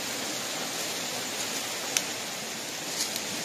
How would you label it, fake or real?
real